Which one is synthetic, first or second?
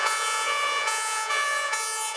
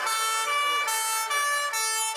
first